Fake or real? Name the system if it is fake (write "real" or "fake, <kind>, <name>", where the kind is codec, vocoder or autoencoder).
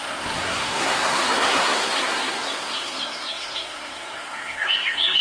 fake, codec, SNAC